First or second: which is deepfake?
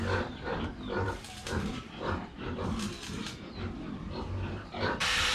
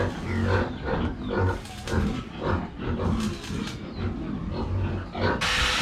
first